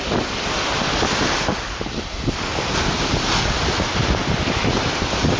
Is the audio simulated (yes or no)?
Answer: no